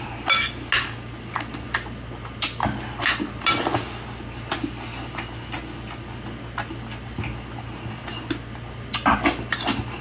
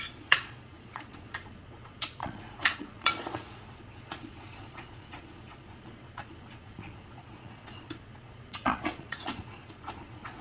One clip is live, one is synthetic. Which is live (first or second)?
first